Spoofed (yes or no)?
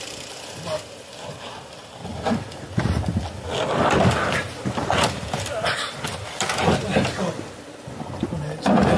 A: no